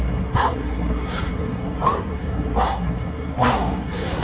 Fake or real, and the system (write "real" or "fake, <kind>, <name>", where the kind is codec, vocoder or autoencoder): fake, codec, SNAC